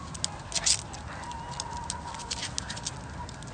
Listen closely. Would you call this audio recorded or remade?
recorded